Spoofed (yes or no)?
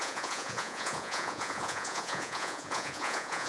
yes